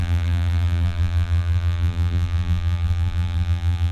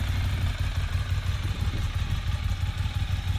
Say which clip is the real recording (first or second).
second